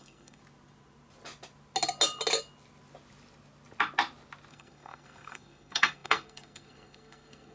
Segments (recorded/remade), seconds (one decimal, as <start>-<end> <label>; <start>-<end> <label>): 0.0-0.4 remade; 0.4-4.5 recorded; 4.5-7.5 remade